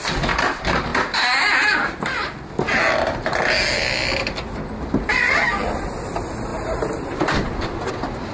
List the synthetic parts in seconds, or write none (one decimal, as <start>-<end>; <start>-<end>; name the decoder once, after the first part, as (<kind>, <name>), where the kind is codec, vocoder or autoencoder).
none